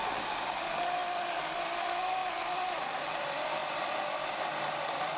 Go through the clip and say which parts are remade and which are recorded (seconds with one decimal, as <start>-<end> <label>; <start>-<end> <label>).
0.0-5.2 recorded